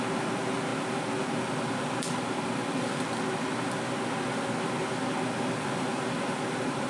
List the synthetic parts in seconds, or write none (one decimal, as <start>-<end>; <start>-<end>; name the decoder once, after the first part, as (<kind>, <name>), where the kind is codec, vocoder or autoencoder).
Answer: none